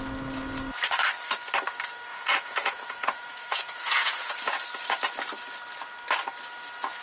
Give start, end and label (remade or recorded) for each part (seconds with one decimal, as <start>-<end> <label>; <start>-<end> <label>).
0.0-2.1 recorded; 2.1-4.6 remade; 4.6-7.0 recorded